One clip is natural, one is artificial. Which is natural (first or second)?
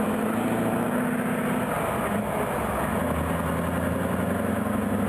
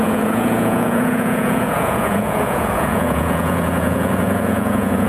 first